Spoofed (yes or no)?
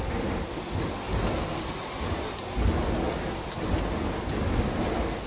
no